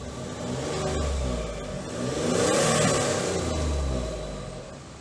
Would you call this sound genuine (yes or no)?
yes